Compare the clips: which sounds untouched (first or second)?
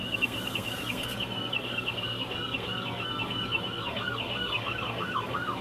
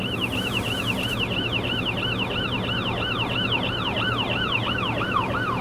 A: second